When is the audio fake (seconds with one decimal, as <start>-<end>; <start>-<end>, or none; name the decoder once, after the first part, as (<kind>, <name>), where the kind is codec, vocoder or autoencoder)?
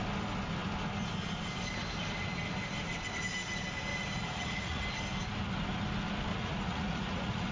3.9-4.8 (vocoder, Vocos); 6.3-7.5